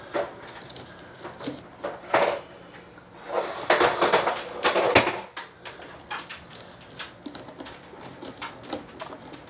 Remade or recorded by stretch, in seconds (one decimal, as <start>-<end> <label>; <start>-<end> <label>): 0.0-6.3 recorded; 6.3-6.8 remade; 6.8-9.5 recorded